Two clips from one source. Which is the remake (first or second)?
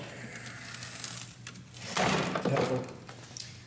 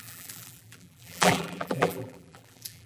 second